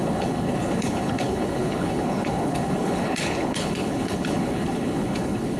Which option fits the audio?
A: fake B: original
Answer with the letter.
A